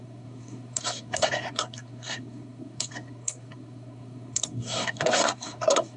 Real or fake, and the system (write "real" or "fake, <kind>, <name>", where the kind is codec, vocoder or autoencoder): fake, codec, SNAC